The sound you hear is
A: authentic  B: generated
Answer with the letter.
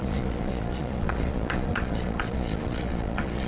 B